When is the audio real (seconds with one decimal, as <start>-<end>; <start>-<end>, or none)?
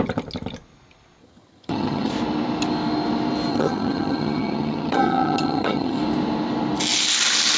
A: 0.0-1.2; 2.1-3.5; 6.0-7.6